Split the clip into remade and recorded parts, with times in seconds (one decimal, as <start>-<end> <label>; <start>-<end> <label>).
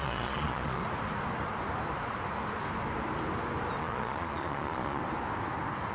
0.0-0.8 remade; 0.8-3.8 recorded; 3.8-5.0 remade; 5.0-5.9 recorded